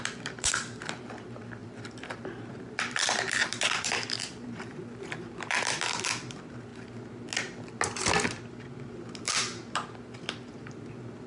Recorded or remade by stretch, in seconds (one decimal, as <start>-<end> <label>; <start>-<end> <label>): 0.0-6.7 remade; 6.7-9.2 recorded; 9.2-11.3 remade